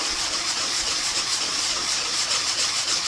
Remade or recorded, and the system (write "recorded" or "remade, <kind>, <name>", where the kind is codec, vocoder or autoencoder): remade, vocoder, Vocos